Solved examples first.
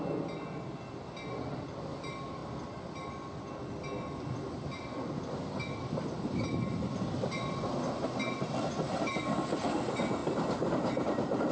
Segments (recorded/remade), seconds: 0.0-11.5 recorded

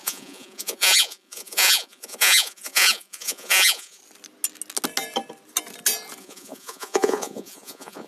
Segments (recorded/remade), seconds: 0.0-4.0 remade; 4.0-6.2 recorded; 6.2-8.1 remade

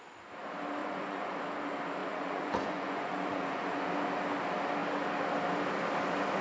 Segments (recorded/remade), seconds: 0.0-0.8 recorded; 0.8-1.3 remade; 1.3-2.0 recorded; 2.0-3.9 remade; 3.9-6.4 recorded

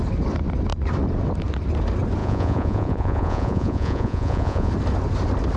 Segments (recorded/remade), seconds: 0.0-2.2 recorded; 2.2-4.7 remade; 4.7-5.6 recorded

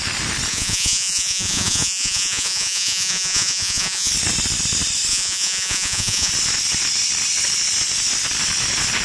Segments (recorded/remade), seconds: 0.0-0.5 recorded; 0.5-4.1 remade; 4.1-5.1 recorded; 5.1-6.3 remade; 6.3-9.0 recorded

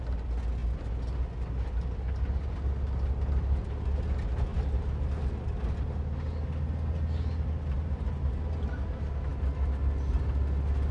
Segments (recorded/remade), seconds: 0.0-10.9 recorded

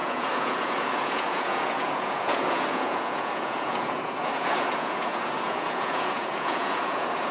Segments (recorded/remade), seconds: 0.0-7.3 remade

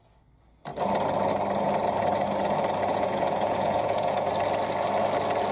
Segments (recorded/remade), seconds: 0.0-2.9 recorded; 2.9-4.3 remade; 4.3-5.5 recorded